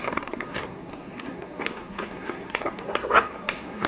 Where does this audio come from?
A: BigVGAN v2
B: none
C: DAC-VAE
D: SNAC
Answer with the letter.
D